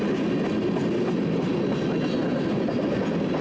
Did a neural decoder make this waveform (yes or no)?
no